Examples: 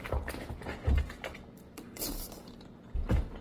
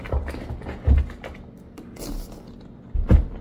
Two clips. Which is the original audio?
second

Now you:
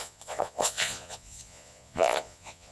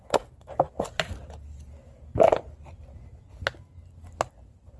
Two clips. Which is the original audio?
second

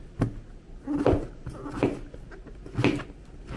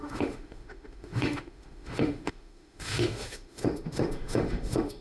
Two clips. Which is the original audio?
first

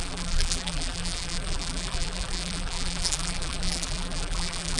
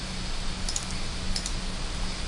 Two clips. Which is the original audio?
second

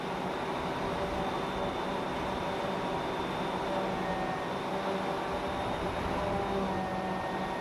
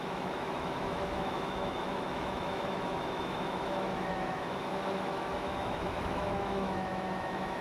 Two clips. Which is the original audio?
first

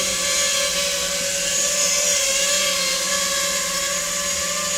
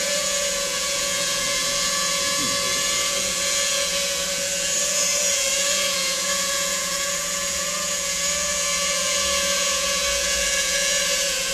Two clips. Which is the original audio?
first